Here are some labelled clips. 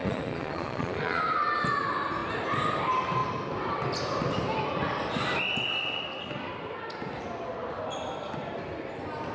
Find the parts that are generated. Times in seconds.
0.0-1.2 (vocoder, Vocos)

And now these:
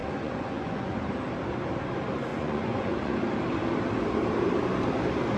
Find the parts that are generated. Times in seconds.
0.0-1.0 (vocoder, Vocos); 2.3-3.1

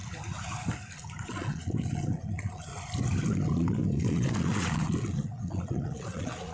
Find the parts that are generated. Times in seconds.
1.1-2.7 (vocoder, Vocos); 3.3-6.5

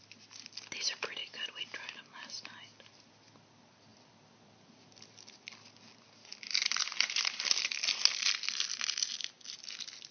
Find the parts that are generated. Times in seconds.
none

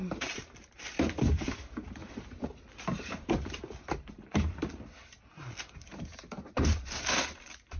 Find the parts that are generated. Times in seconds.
0.0-4.6 (vocoder, BigVGAN v2); 5.7-7.8